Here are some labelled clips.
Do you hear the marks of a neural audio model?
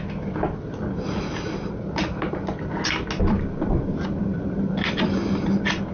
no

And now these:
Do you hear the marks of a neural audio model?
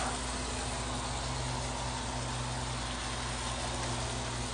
no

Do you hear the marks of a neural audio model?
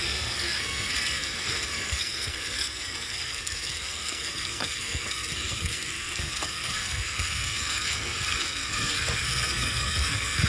yes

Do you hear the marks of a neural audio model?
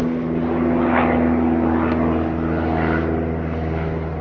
no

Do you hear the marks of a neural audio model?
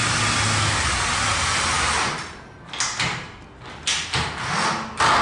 no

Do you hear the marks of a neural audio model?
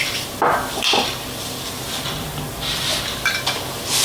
no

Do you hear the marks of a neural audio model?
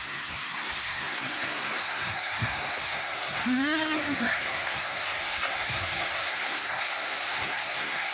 yes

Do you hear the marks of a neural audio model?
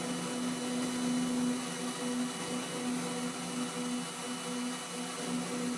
no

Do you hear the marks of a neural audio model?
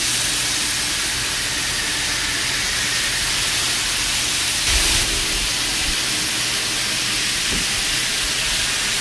no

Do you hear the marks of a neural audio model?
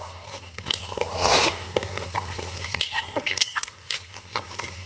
yes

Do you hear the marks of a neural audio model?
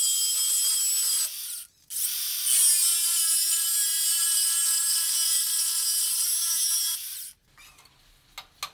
no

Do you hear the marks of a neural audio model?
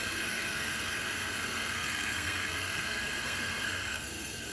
yes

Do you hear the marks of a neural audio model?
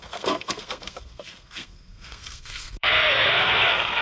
yes